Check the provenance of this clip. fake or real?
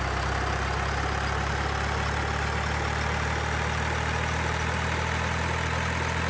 real